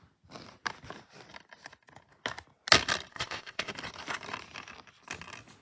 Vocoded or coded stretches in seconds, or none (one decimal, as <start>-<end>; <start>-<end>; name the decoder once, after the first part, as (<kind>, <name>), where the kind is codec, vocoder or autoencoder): 3.1-3.7 (codec, ZipCodec)